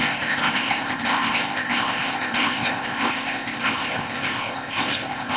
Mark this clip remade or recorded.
remade